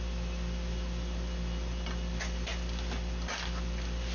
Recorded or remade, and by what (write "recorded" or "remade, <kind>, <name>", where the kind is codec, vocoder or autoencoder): recorded